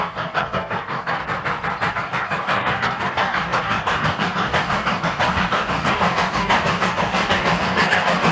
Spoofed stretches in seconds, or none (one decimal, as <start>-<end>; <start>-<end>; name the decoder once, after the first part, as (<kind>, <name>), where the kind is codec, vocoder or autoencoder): 0.0-1.2 (codec, DAC); 1.9-8.3